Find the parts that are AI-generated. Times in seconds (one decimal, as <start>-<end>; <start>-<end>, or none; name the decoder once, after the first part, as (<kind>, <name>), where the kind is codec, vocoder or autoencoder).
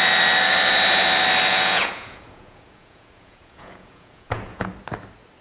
1.5-4.7 (vocoder, Vocos)